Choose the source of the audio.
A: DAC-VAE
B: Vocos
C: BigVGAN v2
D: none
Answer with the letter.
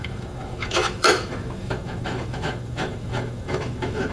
A